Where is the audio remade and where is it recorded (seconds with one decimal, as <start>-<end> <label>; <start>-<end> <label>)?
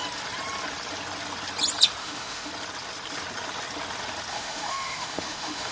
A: 0.0-2.0 recorded; 2.0-2.5 remade; 2.5-4.3 recorded; 4.3-5.7 remade